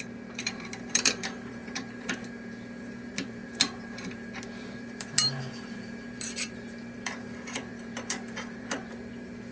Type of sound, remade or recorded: remade